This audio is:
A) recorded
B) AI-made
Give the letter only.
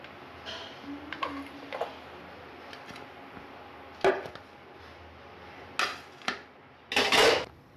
A